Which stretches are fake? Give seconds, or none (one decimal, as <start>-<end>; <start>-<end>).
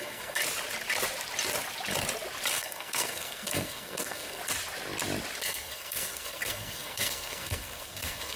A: 0.0-0.4; 2.5-4.4; 5.4-8.4